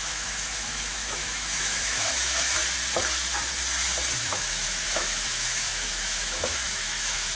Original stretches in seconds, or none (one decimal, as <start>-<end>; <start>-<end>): 2.6-4.2